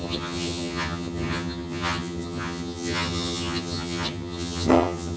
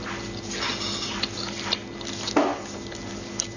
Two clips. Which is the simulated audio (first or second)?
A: first